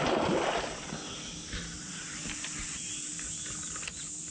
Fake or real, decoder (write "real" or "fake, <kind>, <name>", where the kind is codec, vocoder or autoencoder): real